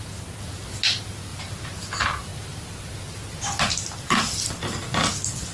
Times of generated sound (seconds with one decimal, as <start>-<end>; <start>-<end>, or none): 1.3-1.9